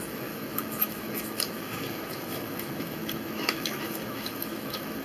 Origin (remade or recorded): remade